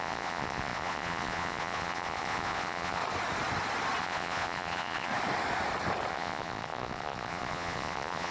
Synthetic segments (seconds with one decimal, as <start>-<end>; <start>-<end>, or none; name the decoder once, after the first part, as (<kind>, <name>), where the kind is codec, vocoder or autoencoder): 0.0-3.0 (vocoder, Vocos); 4.0-5.1; 6.1-8.3